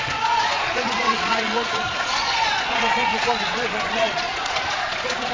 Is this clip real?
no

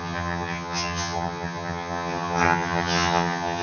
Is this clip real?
no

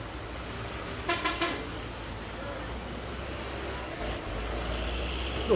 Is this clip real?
yes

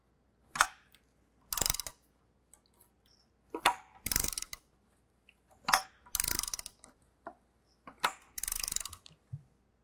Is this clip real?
yes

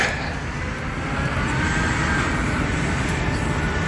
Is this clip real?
yes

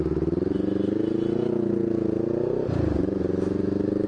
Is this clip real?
yes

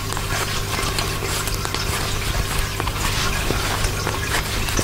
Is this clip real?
yes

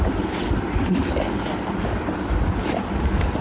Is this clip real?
yes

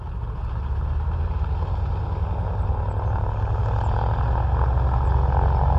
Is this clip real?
yes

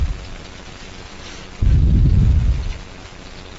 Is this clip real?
yes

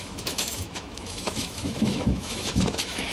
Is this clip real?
no